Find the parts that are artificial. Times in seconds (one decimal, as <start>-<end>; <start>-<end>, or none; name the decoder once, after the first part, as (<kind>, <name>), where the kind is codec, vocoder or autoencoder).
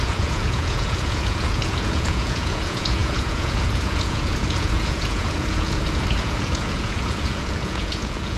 0.0-8.4 (vocoder, Vocos)